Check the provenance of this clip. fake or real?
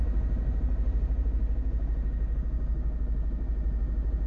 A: real